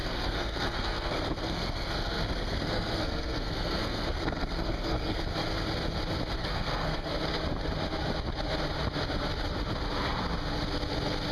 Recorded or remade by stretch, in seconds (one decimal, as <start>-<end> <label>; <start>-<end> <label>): 0.0-5.2 remade; 5.2-6.4 recorded; 6.4-7.1 remade; 7.1-11.3 recorded